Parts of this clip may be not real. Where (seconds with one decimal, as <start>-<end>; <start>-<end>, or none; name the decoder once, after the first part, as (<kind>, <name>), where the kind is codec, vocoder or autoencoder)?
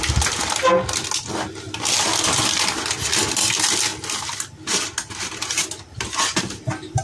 none